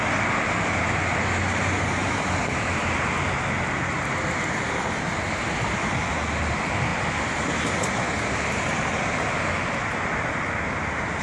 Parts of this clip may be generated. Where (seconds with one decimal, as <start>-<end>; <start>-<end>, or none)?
none

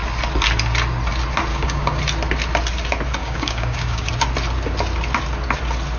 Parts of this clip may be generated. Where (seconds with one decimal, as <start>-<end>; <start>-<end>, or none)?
1.5-2.0; 3.2-4.1

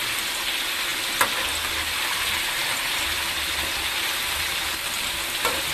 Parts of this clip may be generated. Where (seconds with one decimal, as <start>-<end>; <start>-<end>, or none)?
none

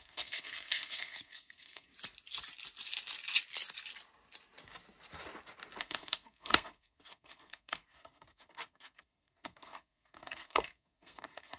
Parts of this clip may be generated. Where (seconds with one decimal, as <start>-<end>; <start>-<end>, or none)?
0.0-1.9; 5.8-11.6

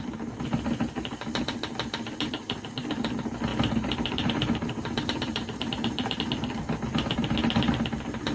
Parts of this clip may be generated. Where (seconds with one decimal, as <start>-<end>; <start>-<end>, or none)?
3.5-6.2

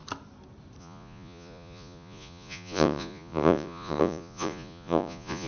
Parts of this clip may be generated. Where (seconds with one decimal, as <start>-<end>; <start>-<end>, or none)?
0.8-5.5

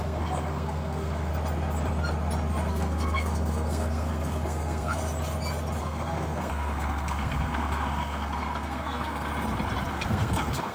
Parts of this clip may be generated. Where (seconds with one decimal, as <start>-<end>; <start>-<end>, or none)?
0.0-1.3; 2.7-5.0; 5.8-9.3; 9.9-10.7

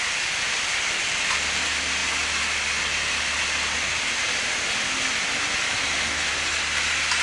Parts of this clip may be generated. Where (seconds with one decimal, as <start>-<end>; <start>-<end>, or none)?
none